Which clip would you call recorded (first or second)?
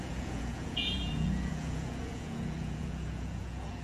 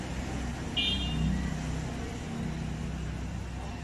second